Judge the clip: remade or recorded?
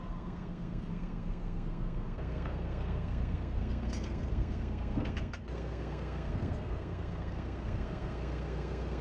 remade